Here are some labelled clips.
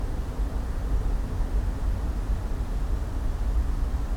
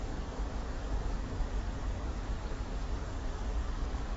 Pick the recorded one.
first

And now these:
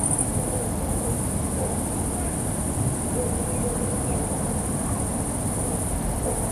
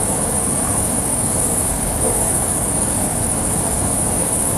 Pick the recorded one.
first